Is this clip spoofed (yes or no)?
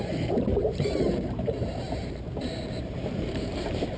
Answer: yes